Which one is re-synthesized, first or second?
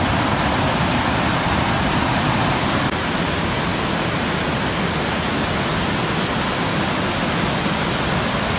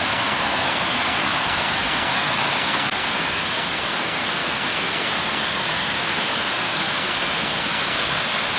second